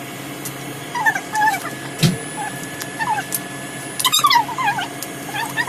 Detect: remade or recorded recorded